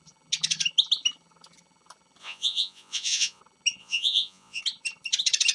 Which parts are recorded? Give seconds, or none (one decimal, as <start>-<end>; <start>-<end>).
0.0-2.2; 3.4-3.8; 4.6-5.5